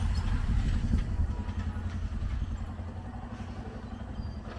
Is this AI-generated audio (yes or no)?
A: no